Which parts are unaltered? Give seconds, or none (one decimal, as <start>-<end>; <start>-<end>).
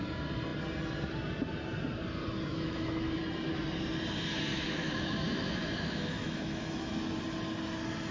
0.0-2.5; 3.2-4.5; 6.9-8.1